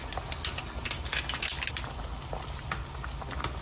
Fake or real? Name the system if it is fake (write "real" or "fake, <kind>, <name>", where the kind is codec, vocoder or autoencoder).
real